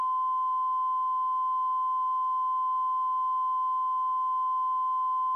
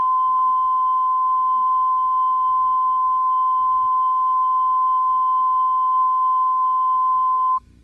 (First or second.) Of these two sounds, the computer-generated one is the second